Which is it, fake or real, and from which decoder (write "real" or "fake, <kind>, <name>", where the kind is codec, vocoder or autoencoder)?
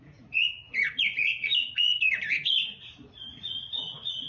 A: fake, vocoder, Vocos